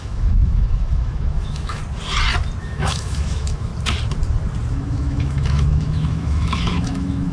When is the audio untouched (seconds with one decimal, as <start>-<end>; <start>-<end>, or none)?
1.8-2.6; 3.7-4.7